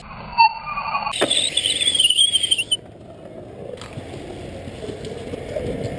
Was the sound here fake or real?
real